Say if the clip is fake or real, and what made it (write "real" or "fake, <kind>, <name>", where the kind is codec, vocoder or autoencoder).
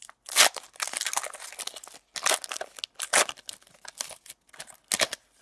real